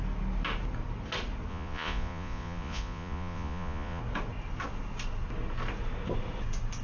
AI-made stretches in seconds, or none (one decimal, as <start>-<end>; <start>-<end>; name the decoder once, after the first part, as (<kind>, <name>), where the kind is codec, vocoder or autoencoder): 1.5-4.0 (vocoder, Vocos)